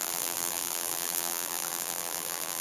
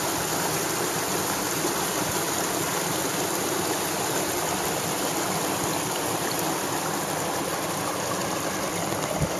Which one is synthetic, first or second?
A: first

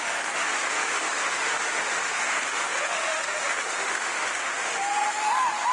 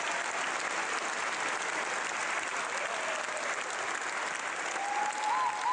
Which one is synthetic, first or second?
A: first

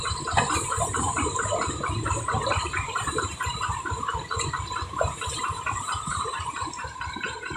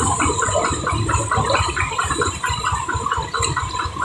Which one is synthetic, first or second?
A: first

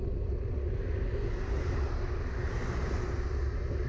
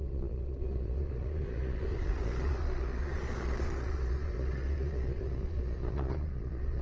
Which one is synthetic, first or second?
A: second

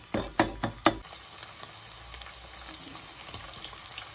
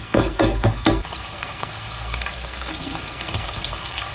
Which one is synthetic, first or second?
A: second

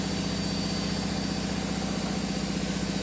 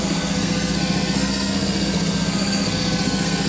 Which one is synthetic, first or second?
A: second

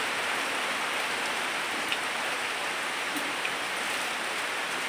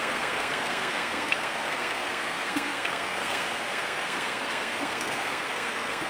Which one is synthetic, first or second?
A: second